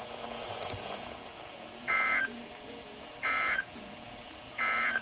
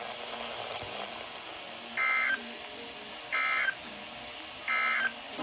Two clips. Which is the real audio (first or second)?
second